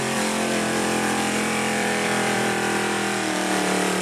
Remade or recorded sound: remade